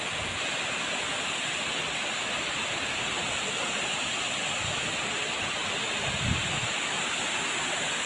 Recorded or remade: recorded